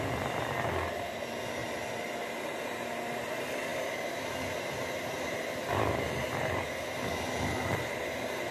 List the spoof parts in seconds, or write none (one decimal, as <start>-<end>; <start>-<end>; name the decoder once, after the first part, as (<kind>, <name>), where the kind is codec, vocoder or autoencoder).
none